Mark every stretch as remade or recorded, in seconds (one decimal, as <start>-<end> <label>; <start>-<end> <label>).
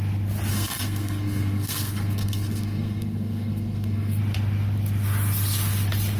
0.0-0.5 recorded; 0.5-4.2 remade; 4.2-6.2 recorded